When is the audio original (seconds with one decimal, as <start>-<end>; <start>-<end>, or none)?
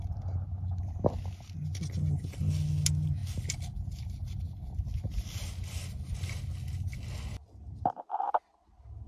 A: 0.0-9.1